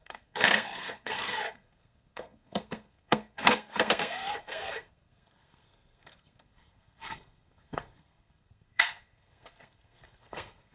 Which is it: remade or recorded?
remade